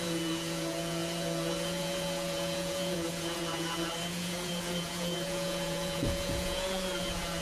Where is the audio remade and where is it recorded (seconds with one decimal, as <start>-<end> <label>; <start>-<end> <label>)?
0.0-7.4 remade